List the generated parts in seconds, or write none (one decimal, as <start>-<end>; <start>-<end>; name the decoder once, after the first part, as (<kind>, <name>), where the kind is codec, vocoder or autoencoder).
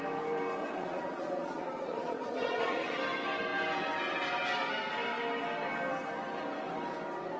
0.6-3.0 (vocoder, Vocos)